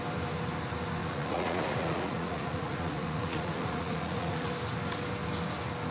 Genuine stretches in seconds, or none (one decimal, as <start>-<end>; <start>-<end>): 0.0-1.0; 4.5-5.9

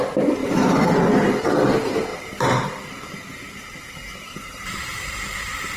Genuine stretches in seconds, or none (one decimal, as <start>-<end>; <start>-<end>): 0.0-0.4; 0.9-5.8

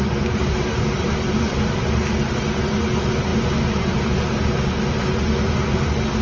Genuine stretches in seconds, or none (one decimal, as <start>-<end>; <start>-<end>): 0.0-6.2

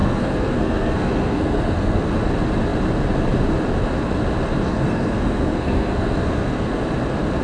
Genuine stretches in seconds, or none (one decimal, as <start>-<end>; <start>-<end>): 2.1-4.7; 6.8-7.4

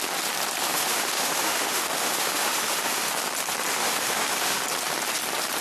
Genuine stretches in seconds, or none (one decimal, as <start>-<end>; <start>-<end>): 0.0-0.6; 3.1-3.7; 4.6-5.6

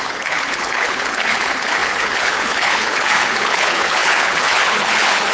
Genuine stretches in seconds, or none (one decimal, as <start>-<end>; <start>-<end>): none

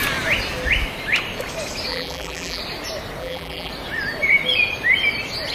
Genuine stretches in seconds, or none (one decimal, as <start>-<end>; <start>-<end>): 0.0-1.9; 2.6-3.2; 3.7-5.5